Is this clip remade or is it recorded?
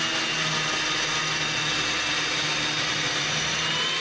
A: recorded